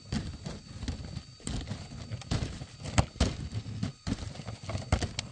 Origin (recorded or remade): recorded